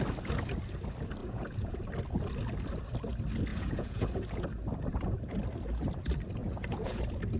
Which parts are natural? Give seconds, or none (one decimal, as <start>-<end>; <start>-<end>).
0.0-1.2; 1.8-3.5; 4.1-6.4; 7.0-7.4